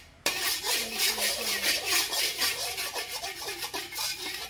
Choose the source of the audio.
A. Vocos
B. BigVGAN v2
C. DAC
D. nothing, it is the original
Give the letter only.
B